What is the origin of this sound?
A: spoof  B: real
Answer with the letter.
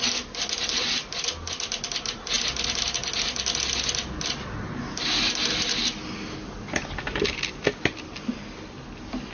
B